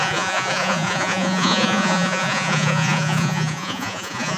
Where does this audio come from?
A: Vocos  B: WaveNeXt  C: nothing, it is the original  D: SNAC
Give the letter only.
A